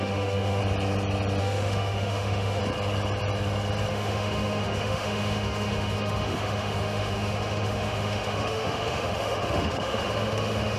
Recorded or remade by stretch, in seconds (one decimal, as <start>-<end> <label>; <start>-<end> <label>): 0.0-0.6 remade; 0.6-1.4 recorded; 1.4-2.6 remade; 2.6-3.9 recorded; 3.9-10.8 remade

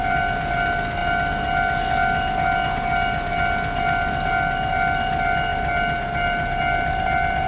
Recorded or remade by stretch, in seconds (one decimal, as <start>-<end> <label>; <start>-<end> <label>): 0.0-7.5 recorded

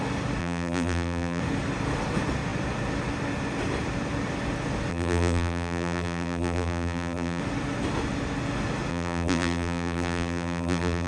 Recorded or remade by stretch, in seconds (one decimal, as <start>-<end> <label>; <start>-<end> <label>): 0.0-0.4 recorded; 0.4-1.4 remade; 1.4-4.9 recorded; 4.9-7.4 remade; 7.4-8.9 recorded; 8.9-11.1 remade

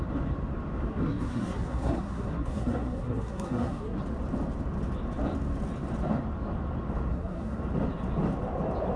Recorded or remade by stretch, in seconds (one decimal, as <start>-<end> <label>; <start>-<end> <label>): 0.0-0.9 recorded; 0.9-4.0 remade; 4.0-7.1 recorded; 7.1-7.6 remade; 7.6-9.0 recorded

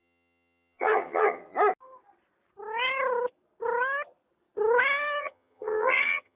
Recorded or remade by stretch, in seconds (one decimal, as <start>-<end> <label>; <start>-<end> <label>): 0.0-1.4 remade; 1.4-5.2 recorded; 5.2-6.4 remade